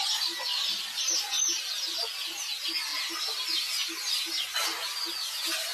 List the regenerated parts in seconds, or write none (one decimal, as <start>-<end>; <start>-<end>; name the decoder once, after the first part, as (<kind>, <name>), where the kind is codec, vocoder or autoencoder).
0.5-1.3 (vocoder, BigVGAN v2)